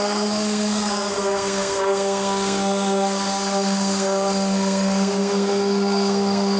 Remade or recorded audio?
remade